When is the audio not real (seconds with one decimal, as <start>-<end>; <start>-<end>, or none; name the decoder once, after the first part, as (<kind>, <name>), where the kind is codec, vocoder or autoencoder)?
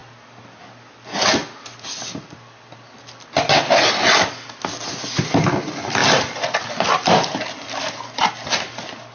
none